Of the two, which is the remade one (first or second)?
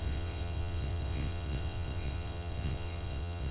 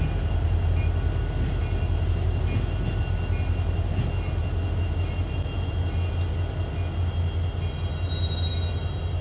first